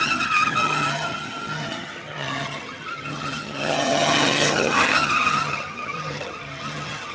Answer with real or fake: fake